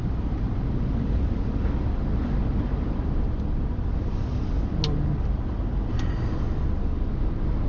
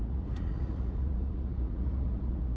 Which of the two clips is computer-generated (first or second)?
second